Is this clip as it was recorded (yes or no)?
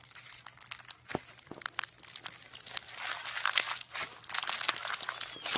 yes